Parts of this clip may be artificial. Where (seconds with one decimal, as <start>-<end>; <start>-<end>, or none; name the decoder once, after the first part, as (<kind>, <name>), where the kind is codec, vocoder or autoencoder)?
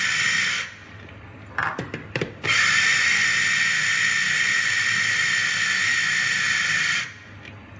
none